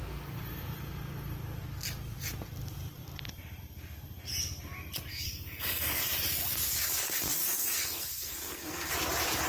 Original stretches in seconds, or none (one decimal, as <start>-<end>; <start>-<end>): 0.0-5.1; 6.0-7.4; 8.9-9.5